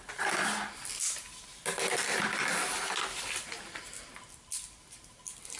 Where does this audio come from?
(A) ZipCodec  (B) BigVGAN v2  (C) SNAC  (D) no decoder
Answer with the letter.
D